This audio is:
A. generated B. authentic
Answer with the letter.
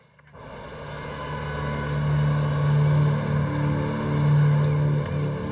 B